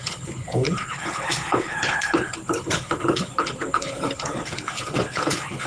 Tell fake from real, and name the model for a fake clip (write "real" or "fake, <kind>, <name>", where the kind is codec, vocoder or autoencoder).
fake, codec, HILCodec